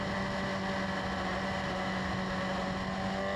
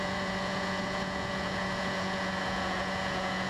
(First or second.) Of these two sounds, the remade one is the second